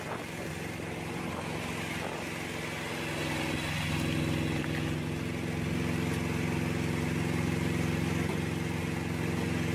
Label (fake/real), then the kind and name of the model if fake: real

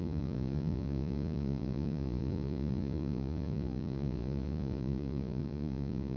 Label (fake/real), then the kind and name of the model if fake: fake, vocoder, Vocos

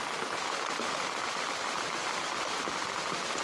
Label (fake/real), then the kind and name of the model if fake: real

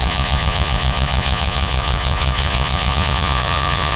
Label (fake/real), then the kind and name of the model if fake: fake, vocoder, Vocos